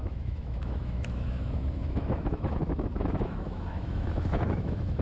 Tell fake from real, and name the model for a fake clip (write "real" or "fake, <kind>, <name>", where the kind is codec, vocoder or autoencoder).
fake, autoencoder, DAC-VAE